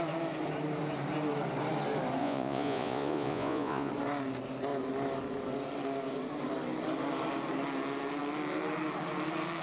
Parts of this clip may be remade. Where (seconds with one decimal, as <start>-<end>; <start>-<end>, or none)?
2.2-3.9